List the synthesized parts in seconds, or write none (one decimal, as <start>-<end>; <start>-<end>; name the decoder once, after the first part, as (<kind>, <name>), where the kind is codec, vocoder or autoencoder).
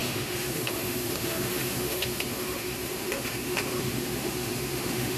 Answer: 0.0-5.2 (autoencoder, DAC-VAE)